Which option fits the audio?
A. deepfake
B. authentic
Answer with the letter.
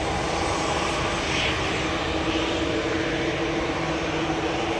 B